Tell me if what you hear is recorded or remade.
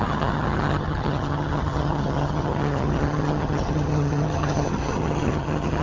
remade